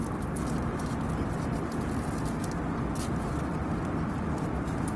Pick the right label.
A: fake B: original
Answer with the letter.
B